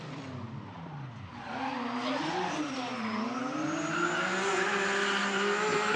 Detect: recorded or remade recorded